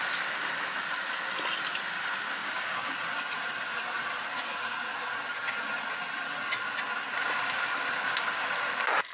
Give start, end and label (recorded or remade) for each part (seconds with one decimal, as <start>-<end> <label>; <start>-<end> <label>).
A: 0.0-2.4 recorded; 2.4-2.9 remade; 2.9-9.1 recorded